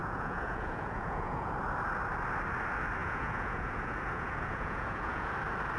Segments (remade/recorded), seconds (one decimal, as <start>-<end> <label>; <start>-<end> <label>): 0.0-1.5 remade; 1.5-3.0 recorded; 3.0-5.3 remade; 5.3-5.8 recorded